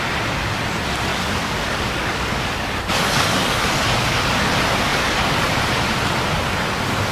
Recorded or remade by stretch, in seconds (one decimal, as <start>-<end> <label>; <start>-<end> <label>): 0.0-1.1 recorded; 1.1-4.5 remade; 4.5-4.9 recorded; 4.9-5.6 remade; 5.6-7.1 recorded